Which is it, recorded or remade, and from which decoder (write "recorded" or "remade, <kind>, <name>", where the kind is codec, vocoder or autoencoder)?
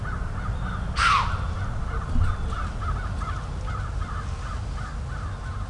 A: recorded